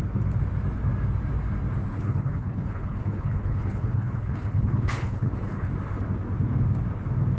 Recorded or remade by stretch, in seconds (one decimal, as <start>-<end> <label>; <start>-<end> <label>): 0.0-1.9 recorded; 1.9-5.7 remade; 5.7-7.4 recorded